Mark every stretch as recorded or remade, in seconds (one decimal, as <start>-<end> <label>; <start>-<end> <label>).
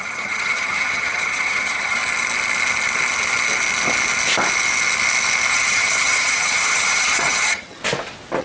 0.0-2.0 remade; 2.0-5.5 recorded; 5.5-7.8 remade; 7.8-8.4 recorded